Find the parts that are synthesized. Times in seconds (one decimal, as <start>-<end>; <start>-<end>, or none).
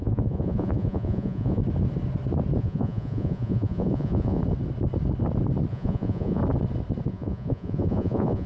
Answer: 0.0-1.6; 2.6-4.4; 5.7-6.4; 7.1-8.5